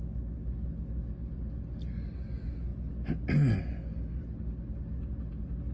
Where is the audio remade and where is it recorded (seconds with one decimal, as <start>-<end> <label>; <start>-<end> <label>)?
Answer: 0.0-5.7 recorded